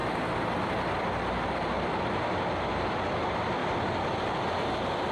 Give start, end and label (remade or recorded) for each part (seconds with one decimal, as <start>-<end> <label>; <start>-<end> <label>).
0.0-3.1 recorded; 3.1-3.6 remade; 3.6-5.1 recorded